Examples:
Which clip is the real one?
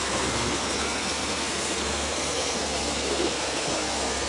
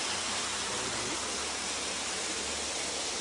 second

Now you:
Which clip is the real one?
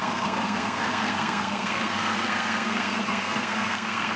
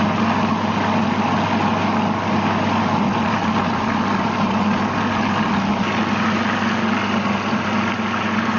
second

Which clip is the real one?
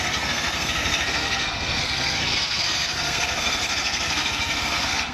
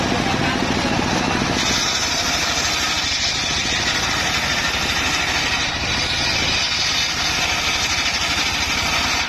second